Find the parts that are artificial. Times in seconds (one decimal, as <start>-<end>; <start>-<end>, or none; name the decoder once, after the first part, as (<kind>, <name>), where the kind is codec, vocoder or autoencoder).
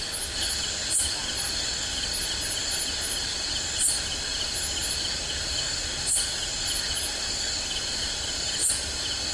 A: none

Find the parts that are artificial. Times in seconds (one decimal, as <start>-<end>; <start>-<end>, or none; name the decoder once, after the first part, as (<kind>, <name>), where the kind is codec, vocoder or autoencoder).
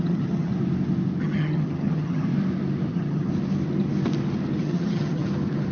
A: 0.0-0.5 (vocoder, HiFi-GAN); 1.2-2.3; 2.9-3.3; 4.6-5.2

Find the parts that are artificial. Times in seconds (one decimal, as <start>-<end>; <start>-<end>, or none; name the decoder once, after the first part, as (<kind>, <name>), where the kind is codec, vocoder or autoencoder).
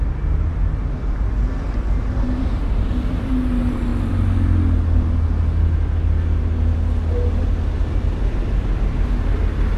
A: none